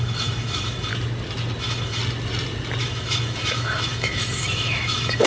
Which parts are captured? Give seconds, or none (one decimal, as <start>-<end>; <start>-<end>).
0.9-1.6; 2.0-2.8